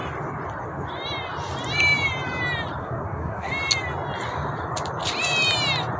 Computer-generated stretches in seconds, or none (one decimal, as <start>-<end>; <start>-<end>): 2.8-3.5